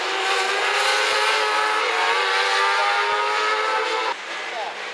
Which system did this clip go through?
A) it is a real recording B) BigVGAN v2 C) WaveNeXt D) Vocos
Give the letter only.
A